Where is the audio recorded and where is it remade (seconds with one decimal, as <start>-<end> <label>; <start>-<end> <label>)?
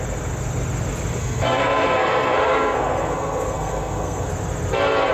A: 0.0-1.2 recorded; 1.2-4.3 remade; 4.3-5.1 recorded